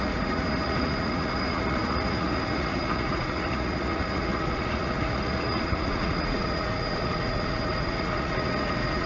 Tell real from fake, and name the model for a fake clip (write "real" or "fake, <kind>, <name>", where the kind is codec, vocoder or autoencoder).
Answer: fake, vocoder, Vocos